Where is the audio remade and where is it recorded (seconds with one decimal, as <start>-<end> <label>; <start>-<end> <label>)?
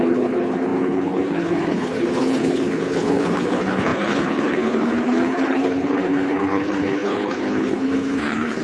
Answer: 0.0-8.6 remade